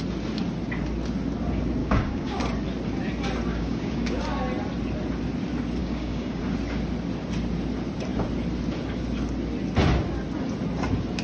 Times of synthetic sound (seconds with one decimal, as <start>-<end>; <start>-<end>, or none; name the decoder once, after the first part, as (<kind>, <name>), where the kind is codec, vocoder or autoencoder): 1.8-2.4 (codec, DAC); 3.5-4.2; 5.8-6.4